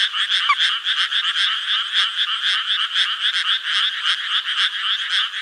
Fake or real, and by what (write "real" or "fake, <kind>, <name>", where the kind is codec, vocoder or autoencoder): real